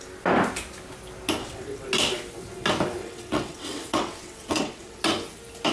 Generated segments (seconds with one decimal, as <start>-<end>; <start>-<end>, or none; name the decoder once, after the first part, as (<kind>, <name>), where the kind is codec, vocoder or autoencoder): 1.4-1.9 (vocoder, WaveNeXt); 3.0-5.0